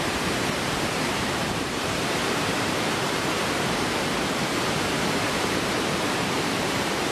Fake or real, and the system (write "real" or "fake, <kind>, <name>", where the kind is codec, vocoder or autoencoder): fake, vocoder, BigVGAN v2